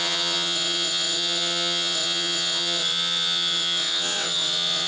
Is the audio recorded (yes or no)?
no